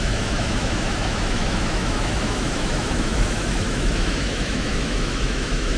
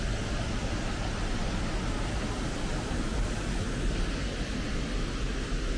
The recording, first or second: second